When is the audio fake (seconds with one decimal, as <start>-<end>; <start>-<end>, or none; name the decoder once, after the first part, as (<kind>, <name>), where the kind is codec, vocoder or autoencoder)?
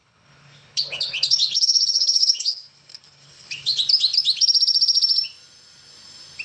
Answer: 0.0-3.8 (codec, HILCodec)